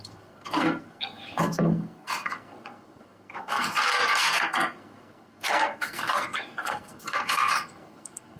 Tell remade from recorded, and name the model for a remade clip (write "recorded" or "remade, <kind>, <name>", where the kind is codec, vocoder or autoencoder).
remade, codec, SNAC